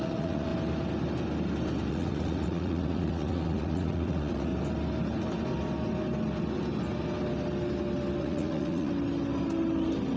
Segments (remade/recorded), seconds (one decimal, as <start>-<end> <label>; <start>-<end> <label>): 0.0-0.5 remade; 0.5-1.9 recorded; 1.9-4.5 remade; 4.5-8.2 recorded; 8.2-8.9 remade; 8.9-10.2 recorded